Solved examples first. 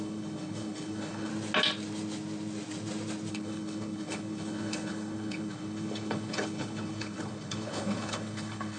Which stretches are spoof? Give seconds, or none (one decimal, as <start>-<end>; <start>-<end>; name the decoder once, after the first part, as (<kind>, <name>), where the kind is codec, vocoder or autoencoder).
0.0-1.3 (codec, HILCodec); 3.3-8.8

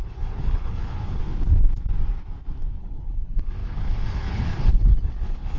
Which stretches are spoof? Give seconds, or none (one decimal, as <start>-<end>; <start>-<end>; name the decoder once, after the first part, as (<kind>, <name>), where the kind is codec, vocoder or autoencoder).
0.0-1.2 (codec, HILCodec); 2.8-5.6

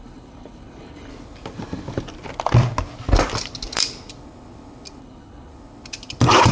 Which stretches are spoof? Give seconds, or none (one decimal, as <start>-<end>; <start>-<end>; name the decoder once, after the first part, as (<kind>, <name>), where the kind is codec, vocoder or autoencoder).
0.0-1.1 (codec, HILCodec); 5.0-5.5

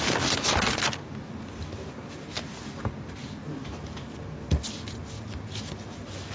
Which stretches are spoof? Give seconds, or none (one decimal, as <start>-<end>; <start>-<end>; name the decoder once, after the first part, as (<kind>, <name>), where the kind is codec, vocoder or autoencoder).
none

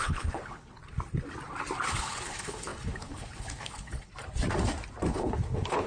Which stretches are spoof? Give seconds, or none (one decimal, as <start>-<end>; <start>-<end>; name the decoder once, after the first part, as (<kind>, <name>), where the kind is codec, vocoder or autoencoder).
0.0-0.8 (codec, HILCodec); 1.9-4.1; 5.1-5.9

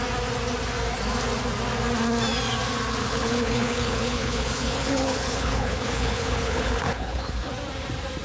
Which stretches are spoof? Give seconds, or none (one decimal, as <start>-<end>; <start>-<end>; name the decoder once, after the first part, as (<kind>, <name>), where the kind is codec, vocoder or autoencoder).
3.0-7.5 (codec, HILCodec)

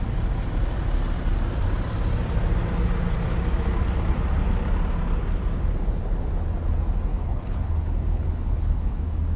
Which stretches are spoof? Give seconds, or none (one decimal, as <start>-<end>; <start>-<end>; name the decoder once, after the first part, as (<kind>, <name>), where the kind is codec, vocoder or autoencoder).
7.1-9.0 (codec, HILCodec)

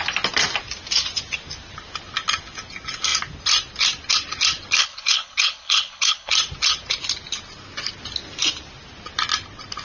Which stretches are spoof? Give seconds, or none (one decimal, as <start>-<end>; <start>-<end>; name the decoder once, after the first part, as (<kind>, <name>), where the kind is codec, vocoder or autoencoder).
4.8-6.3 (codec, HILCodec)